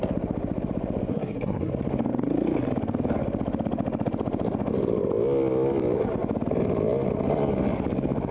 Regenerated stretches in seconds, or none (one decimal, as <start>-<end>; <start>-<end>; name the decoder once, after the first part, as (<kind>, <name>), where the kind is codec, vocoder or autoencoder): 1.1-1.7 (codec, SNAC)